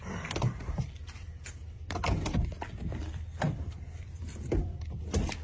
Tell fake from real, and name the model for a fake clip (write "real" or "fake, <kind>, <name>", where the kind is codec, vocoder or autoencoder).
fake, vocoder, BigVGAN v2